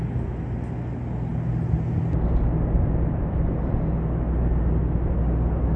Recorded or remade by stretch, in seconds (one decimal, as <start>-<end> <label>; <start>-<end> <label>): 0.0-5.8 recorded